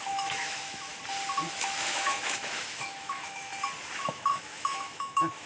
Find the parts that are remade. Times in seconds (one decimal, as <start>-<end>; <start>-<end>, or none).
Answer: 0.0-0.9; 1.5-3.5; 4.0-5.5